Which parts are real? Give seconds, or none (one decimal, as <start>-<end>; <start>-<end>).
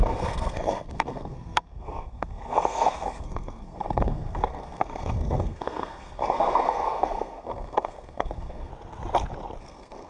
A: 8.7-9.6